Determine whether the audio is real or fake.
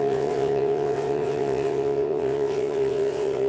fake